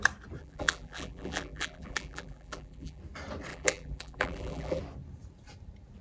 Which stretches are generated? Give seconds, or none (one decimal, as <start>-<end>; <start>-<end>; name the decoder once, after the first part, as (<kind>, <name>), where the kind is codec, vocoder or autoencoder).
0.4-3.0 (vocoder, BigVGAN v2); 3.5-4.8